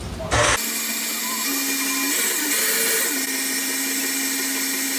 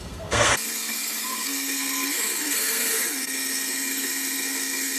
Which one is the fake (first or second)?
second